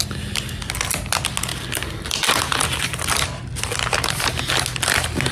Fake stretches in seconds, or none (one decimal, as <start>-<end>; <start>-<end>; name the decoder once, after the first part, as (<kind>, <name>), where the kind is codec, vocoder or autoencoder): 1.5-4.4 (vocoder, BigVGAN v2)